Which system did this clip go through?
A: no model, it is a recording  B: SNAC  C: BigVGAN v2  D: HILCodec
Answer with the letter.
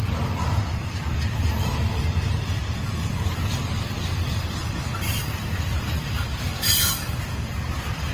C